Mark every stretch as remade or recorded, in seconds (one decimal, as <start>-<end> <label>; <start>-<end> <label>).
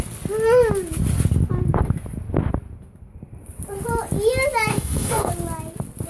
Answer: 0.0-4.7 recorded; 4.7-5.3 remade; 5.3-6.1 recorded